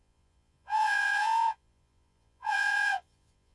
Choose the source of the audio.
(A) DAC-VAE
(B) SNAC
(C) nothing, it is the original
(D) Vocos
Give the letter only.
D